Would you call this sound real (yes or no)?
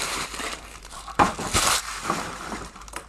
no